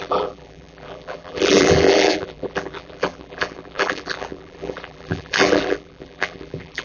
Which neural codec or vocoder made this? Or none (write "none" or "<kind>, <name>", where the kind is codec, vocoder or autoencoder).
vocoder, BigVGAN v2